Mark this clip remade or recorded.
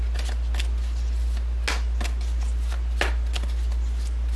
recorded